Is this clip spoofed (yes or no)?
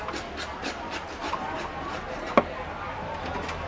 no